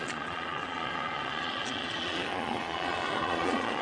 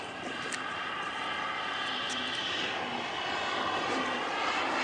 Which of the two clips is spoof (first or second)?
first